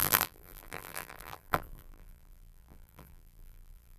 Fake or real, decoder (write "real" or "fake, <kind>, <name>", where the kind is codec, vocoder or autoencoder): fake, vocoder, BigVGAN v2